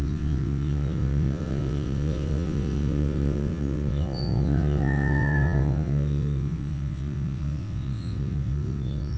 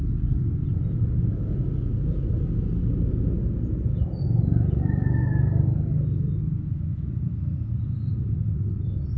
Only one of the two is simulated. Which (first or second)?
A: first